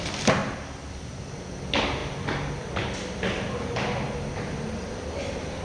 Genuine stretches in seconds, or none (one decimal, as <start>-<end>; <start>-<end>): 0.0-5.6